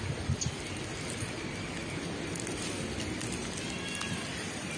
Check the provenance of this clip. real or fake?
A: real